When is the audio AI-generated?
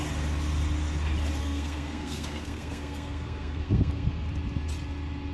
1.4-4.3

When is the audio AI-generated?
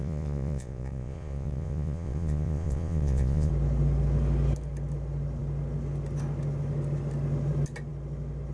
0.0-3.5